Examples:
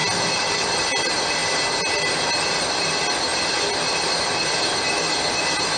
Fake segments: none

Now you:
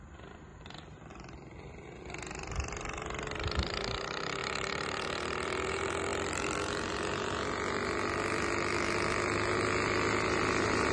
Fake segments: 0.5-1.1 (vocoder, BigVGAN v2); 4.4-5.1

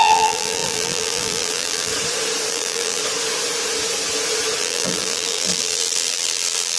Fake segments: 0.0-1.9 (vocoder, BigVGAN v2); 2.5-3.0; 4.6-6.8

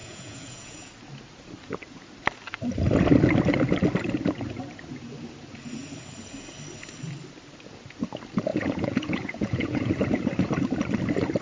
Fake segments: 0.0-0.9 (vocoder, Vocos); 8.5-9.9

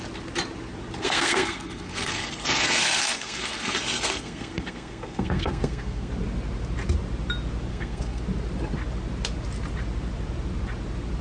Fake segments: 1.0-6.1 (codec, SNAC); 7.7-8.2